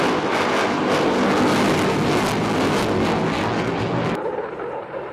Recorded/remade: recorded